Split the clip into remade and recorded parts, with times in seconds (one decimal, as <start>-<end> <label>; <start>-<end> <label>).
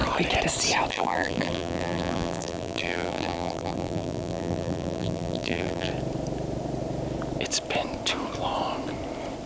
0.0-0.9 recorded; 0.9-5.9 remade; 5.9-9.5 recorded